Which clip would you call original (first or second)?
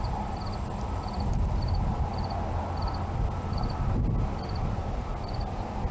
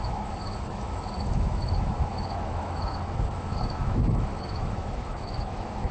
first